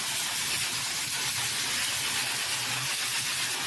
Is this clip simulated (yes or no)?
no